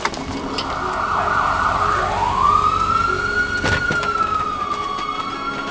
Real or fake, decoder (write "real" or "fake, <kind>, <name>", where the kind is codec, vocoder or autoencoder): real